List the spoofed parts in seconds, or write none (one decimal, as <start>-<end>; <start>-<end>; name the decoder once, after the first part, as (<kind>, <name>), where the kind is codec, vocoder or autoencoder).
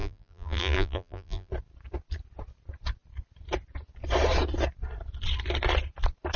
0.0-1.5 (vocoder, BigVGAN v2)